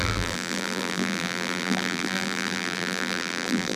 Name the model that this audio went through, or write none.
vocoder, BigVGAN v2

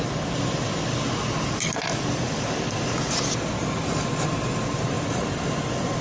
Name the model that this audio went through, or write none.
none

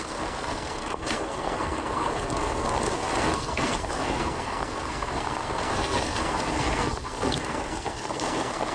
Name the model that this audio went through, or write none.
codec, SNAC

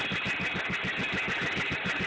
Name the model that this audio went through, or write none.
none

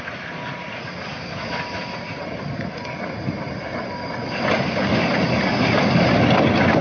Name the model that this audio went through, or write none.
none